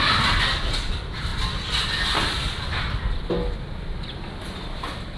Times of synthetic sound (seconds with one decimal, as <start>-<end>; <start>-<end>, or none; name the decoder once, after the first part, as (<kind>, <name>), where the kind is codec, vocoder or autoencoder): none